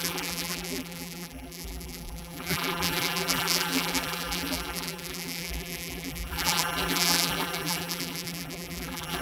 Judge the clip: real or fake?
fake